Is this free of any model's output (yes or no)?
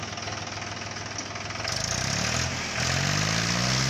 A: yes